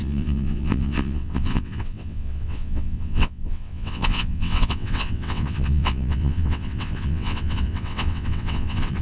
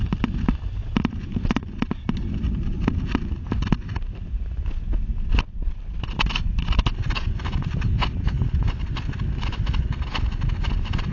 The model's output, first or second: first